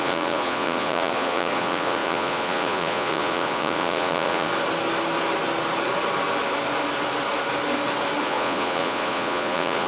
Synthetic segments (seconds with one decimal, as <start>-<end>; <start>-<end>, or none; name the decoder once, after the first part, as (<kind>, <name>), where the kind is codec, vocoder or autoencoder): 0.0-4.5 (vocoder, Vocos); 8.2-9.9